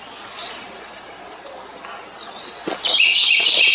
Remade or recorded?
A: recorded